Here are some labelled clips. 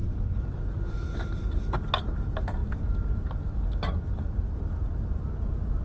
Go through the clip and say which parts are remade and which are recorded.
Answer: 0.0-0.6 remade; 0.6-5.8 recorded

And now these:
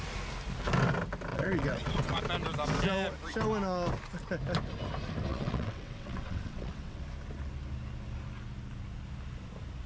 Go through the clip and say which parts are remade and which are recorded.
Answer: 0.0-1.3 recorded; 1.3-2.2 remade; 2.2-5.3 recorded; 5.3-7.0 remade; 7.0-9.9 recorded

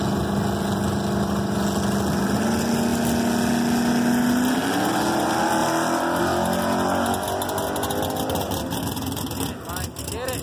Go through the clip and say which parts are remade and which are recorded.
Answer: 0.0-10.4 recorded

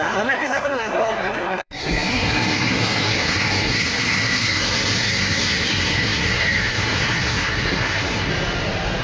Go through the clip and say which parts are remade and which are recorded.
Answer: 0.0-8.3 remade; 8.3-9.0 recorded